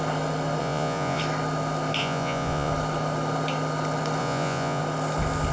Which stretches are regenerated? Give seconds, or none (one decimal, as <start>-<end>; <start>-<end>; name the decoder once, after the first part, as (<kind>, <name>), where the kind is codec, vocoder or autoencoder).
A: 0.6-1.2 (vocoder, Vocos); 2.0-2.7; 4.2-4.8